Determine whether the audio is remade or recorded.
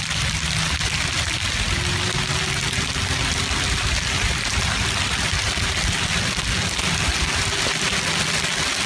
recorded